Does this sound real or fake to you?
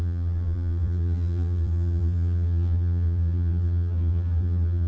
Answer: fake